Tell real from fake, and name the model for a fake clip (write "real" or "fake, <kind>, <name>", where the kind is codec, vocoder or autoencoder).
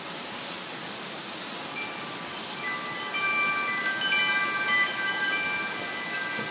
real